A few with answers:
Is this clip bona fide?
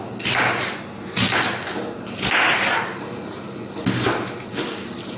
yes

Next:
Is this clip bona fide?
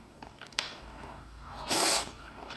no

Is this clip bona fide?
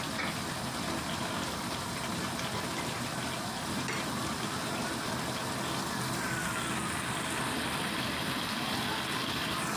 yes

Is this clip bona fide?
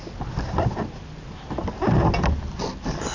yes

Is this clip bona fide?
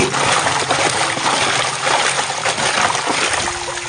yes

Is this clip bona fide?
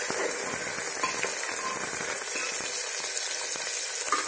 yes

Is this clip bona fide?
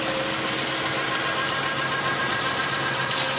yes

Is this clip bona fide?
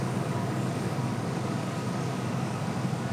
no